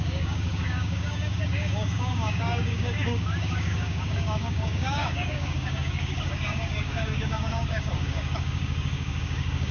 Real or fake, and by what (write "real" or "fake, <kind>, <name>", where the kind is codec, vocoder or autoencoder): fake, codec, DAC